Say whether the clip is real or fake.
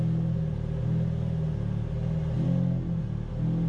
real